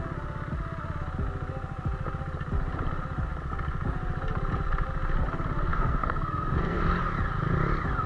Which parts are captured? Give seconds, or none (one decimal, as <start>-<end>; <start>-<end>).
0.0-5.7; 6.8-8.1